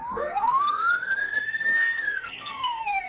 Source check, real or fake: fake